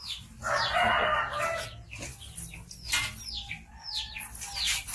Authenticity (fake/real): real